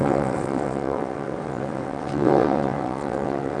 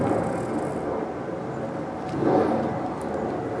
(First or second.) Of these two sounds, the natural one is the second